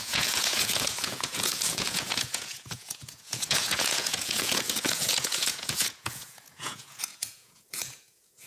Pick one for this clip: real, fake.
fake